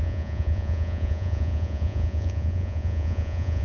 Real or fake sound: fake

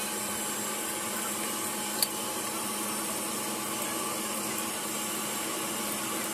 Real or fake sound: real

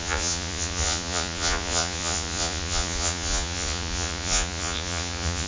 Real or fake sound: fake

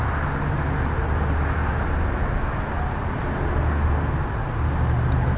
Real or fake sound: real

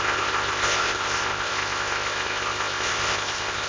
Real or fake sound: fake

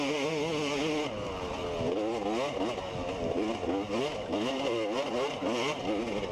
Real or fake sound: real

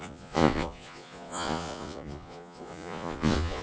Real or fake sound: fake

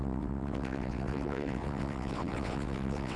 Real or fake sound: fake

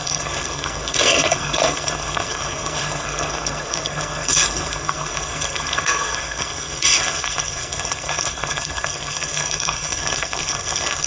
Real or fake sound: fake